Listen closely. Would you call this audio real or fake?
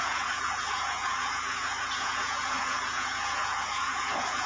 fake